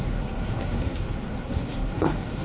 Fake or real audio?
fake